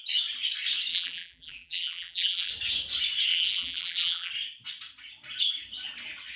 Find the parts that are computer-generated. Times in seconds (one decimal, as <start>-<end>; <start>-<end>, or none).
0.9-2.5; 3.3-4.3